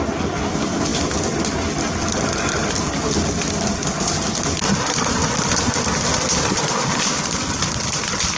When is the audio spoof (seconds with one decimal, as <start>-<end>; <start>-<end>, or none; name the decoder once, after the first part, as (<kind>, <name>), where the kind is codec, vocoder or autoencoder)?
none